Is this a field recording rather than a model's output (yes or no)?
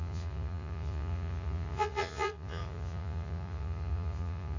no